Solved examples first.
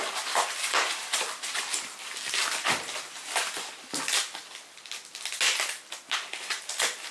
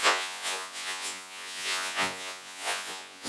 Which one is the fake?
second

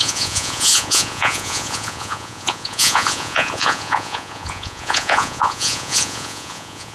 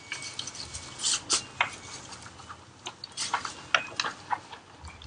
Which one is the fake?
first